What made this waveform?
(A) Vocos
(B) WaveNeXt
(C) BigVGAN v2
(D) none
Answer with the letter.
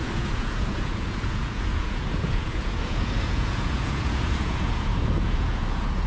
A